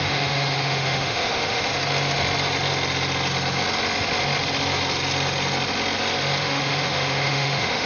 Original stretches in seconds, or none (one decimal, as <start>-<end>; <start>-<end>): 1.7-6.4